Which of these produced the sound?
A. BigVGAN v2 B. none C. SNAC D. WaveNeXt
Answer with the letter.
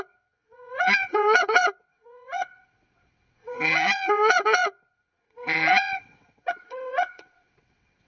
D